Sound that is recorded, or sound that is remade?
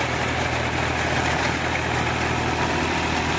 recorded